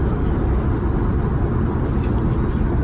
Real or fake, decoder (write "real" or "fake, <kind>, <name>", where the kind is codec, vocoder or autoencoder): real